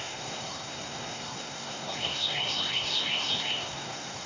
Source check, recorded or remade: remade